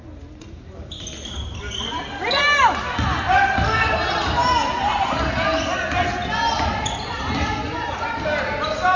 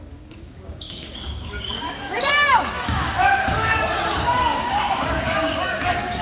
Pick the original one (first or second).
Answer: first